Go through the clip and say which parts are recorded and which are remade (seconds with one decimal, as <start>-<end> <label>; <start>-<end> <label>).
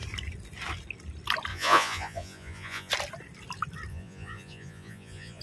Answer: 0.0-1.5 recorded; 1.5-2.9 remade; 2.9-3.9 recorded; 3.9-5.4 remade